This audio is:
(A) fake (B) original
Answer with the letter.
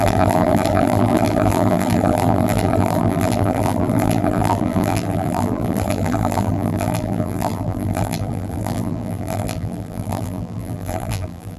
A